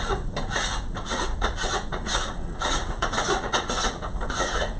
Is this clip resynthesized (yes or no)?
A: yes